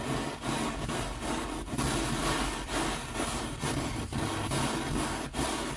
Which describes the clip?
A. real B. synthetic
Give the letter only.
A